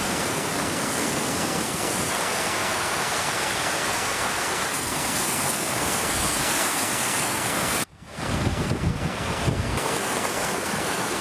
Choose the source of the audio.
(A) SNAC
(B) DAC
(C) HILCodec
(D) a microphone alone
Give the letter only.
A